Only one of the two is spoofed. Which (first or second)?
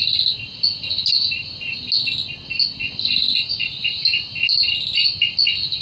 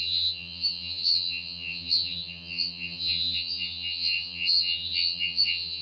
second